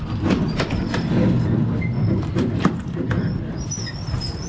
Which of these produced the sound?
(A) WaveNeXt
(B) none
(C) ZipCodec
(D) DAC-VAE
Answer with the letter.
B